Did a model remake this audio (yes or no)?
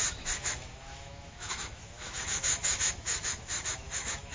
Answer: yes